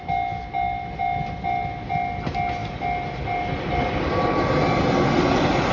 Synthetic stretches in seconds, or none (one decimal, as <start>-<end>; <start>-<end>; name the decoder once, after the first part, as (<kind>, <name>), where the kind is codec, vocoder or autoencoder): none